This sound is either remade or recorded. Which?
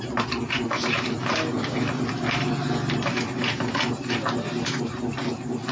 recorded